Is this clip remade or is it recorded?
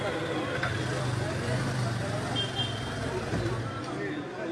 recorded